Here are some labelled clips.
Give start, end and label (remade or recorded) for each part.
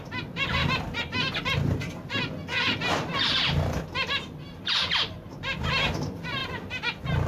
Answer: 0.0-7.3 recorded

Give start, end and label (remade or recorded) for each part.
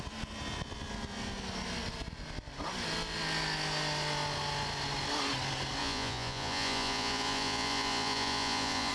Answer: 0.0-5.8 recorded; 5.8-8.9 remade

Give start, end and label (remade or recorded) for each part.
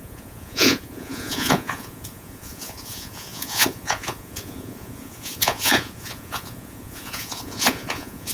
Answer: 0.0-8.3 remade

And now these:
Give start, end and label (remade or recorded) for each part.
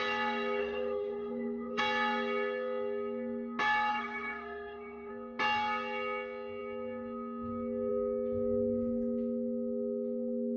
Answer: 0.0-0.6 recorded; 0.6-1.8 remade; 1.8-3.9 recorded; 3.9-5.1 remade; 5.1-10.6 recorded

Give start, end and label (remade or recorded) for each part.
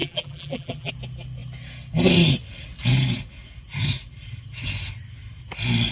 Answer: 0.0-0.9 remade; 0.9-5.9 recorded